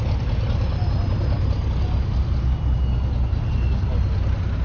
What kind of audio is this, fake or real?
real